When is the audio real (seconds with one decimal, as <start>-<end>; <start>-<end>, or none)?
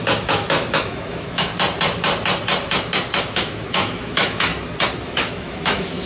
1.5-3.2; 4.5-5.0